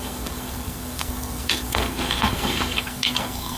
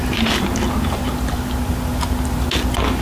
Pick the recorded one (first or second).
second